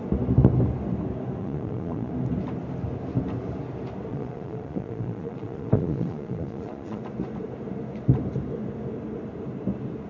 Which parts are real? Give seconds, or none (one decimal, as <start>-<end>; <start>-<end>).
0.0-1.4; 2.1-4.1; 7.0-10.1